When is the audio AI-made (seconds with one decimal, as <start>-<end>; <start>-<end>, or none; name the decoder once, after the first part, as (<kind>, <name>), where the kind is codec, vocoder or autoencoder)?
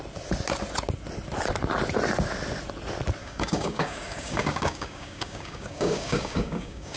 3.2-7.0 (codec, DAC)